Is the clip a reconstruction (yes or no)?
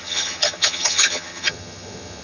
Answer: yes